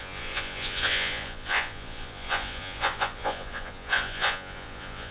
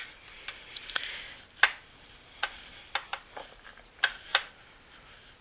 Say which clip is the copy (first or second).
first